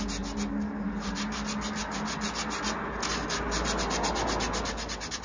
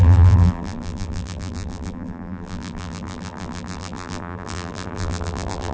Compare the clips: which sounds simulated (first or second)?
second